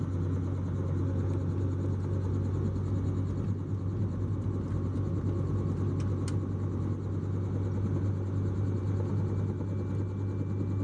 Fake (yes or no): no